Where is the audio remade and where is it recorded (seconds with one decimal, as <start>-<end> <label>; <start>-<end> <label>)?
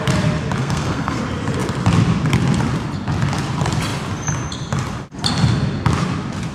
0.0-0.6 recorded; 0.6-1.2 remade; 1.2-6.5 recorded